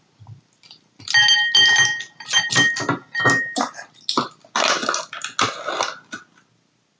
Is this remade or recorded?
recorded